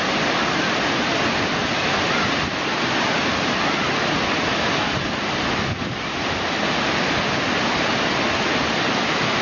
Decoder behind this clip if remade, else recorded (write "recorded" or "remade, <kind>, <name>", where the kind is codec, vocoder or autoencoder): recorded